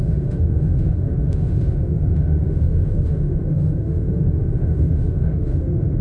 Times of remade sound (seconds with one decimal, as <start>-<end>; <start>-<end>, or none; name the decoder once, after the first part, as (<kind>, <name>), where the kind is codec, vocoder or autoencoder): 0.0-6.0 (autoencoder, DAC-VAE)